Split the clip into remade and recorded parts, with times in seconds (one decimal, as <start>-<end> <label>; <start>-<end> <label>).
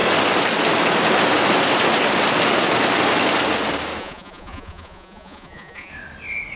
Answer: 0.0-4.0 recorded; 4.0-5.9 remade; 5.9-6.6 recorded